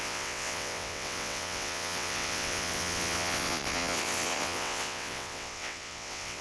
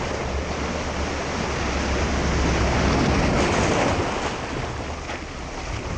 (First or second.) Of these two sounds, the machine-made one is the first